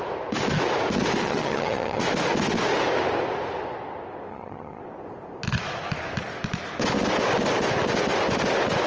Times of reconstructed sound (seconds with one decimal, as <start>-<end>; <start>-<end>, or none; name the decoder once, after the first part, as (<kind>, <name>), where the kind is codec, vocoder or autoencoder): 1.2-2.0 (vocoder, HiFi-GAN); 4.3-4.8